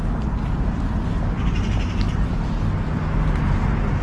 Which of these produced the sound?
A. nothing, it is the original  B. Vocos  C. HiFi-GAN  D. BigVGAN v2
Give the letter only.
A